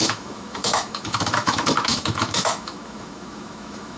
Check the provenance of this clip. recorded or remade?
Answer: remade